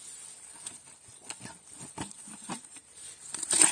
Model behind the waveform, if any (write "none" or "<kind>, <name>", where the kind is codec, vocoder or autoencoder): none